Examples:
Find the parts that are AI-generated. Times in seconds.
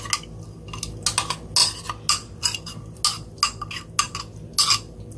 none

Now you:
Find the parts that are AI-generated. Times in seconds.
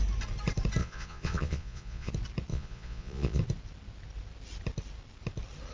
0.8-2.1 (vocoder, Vocos); 2.5-3.4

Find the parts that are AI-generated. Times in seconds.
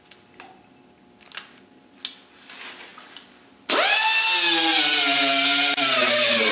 none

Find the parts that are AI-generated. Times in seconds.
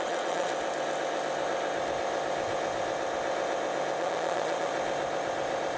0.0-0.5 (vocoder, Vocos); 4.0-4.7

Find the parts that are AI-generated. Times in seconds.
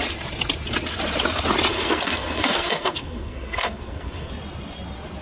1.7-4.3 (codec, SNAC)